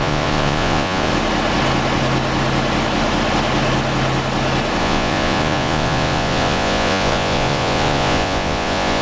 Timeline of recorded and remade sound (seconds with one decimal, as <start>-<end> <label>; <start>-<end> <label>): 0.0-1.1 remade; 1.1-4.8 recorded; 4.8-9.0 remade